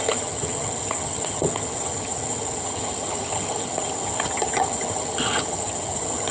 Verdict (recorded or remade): remade